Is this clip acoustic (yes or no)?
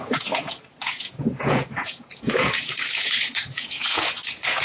no